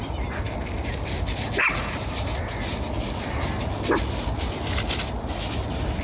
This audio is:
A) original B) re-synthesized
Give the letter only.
A